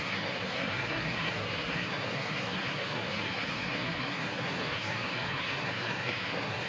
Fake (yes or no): yes